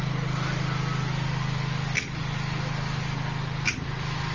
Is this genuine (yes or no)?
yes